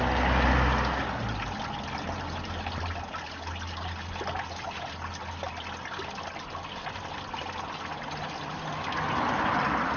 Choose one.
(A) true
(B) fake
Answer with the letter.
A